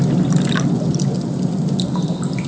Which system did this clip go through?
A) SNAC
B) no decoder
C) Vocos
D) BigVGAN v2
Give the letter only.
B